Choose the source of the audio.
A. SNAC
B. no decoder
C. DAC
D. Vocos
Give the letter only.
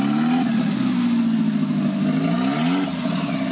B